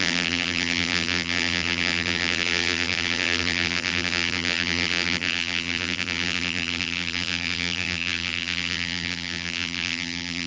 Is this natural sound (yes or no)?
no